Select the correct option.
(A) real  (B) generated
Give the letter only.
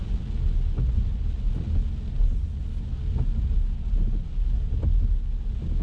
A